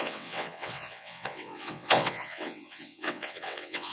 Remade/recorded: remade